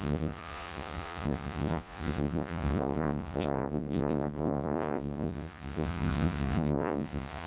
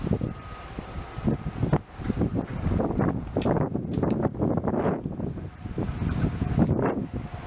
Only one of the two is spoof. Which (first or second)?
first